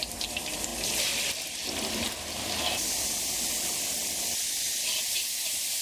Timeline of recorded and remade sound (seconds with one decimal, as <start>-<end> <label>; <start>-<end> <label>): 0.0-5.8 recorded